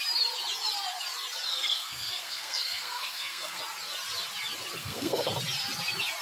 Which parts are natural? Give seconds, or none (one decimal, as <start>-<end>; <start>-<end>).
0.0-1.5; 3.6-4.8; 5.3-6.2